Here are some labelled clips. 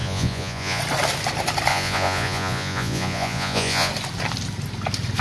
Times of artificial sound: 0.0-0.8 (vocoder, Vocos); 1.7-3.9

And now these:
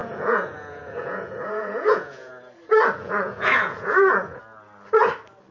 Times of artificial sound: 0.0-2.3 (vocoder, Vocos); 3.0-4.4

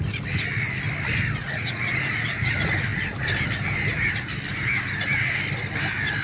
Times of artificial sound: 1.4-2.5 (vocoder, Vocos)

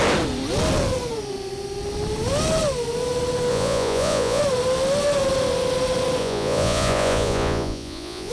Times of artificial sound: 3.5-4.4 (vocoder, Vocos); 6.2-8.3